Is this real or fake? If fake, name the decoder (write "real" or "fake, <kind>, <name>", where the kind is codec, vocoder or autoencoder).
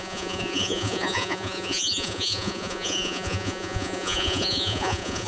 fake, vocoder, Vocos